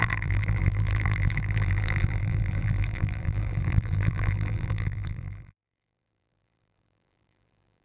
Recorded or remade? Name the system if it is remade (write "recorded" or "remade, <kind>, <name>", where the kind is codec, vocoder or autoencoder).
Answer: remade, vocoder, BigVGAN v2